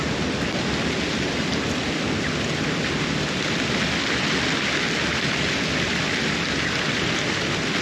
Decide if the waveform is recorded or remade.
recorded